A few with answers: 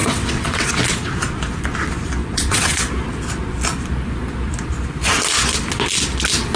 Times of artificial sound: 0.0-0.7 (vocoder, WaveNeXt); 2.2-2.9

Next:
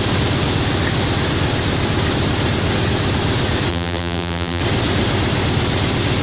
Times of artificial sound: 3.7-4.6 (vocoder, BigVGAN v2)